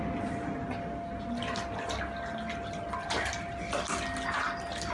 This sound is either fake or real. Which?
real